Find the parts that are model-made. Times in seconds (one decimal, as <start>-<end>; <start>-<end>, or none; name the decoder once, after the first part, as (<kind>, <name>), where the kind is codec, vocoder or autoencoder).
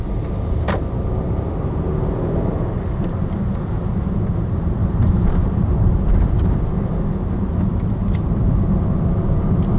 4.8-6.6 (vocoder, BigVGAN v2)